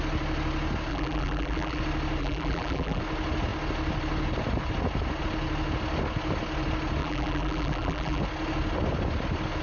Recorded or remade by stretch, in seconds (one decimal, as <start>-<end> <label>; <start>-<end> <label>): 0.0-0.9 recorded; 0.9-1.8 remade; 1.8-2.2 recorded; 2.2-3.0 remade; 3.0-7.0 recorded; 7.0-8.2 remade; 8.2-9.6 recorded